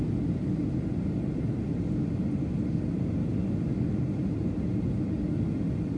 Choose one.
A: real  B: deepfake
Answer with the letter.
A